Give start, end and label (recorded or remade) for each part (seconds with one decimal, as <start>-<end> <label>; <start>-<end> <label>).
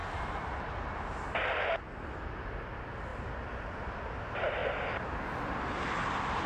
0.0-0.7 remade; 0.7-6.5 recorded